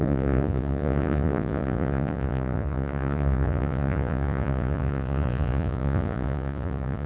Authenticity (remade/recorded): remade